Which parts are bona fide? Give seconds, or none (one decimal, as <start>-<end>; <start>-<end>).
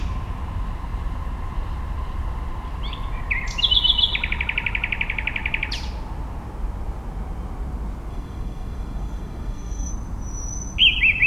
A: 0.0-8.1; 9.9-11.3